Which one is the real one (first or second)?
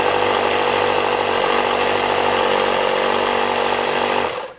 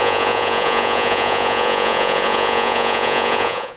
first